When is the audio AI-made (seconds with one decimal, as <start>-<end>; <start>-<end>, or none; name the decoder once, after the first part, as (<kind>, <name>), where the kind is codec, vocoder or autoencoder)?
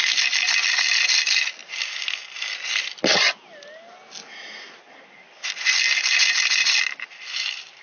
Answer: none